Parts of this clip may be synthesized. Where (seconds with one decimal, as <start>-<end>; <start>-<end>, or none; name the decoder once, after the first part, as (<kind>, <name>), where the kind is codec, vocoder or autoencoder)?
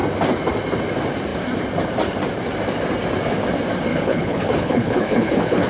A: 3.9-5.7 (codec, HILCodec)